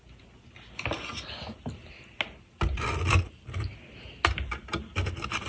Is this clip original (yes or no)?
yes